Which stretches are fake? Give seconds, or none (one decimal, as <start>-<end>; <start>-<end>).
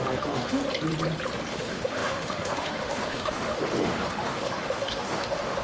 0.0-0.6; 1.5-5.6